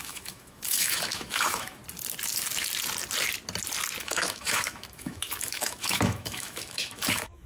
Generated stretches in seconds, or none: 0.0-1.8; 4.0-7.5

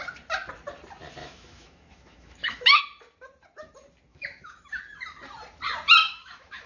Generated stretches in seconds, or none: 1.2-2.8; 4.1-4.8; 6.0-6.7